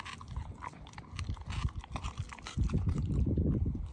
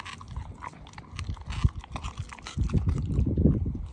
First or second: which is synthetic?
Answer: first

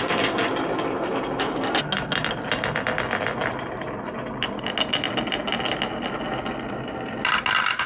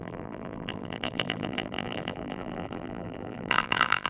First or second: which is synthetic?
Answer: second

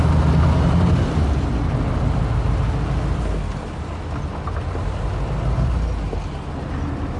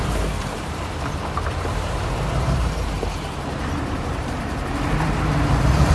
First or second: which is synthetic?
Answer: second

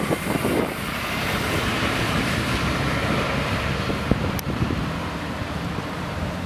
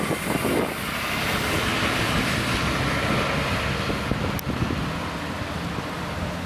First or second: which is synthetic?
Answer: first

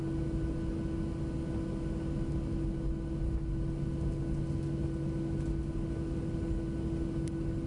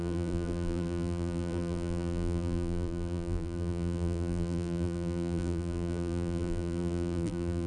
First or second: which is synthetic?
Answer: second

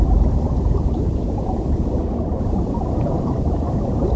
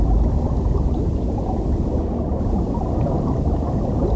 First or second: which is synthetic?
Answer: first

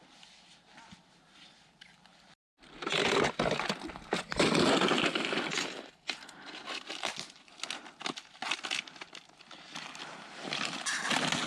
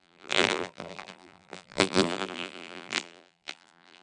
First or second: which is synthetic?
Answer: second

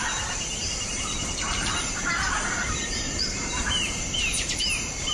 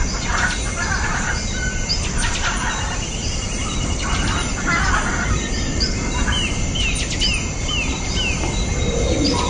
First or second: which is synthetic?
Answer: first